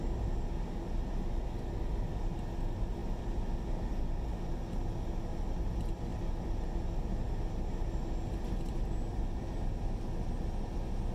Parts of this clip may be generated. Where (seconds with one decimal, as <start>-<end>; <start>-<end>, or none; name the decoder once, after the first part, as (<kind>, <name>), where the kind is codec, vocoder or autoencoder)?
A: none